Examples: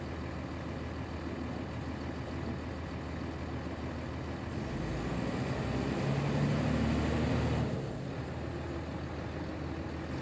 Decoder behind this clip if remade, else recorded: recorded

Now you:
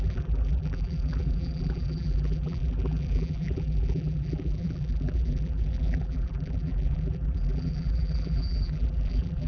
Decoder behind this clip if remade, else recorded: remade, vocoder, BigVGAN v2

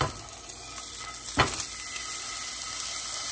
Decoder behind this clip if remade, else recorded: recorded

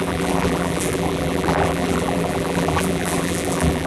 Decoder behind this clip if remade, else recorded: remade, vocoder, BigVGAN v2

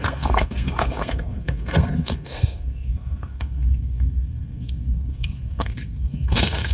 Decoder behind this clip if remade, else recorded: remade, codec, SNAC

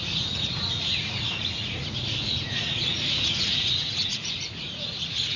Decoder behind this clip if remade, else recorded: remade, vocoder, Vocos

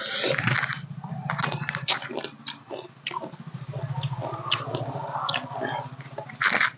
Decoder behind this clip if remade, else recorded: recorded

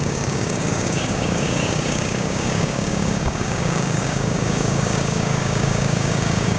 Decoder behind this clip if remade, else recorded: remade, codec, DAC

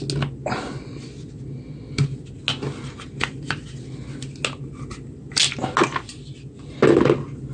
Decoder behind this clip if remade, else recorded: recorded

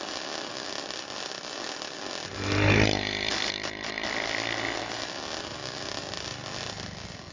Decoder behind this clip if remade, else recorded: recorded